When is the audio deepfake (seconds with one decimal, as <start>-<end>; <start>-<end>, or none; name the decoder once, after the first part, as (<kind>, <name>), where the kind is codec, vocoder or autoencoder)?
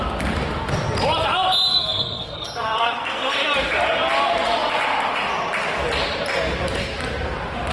1.7-3.3 (codec, SNAC)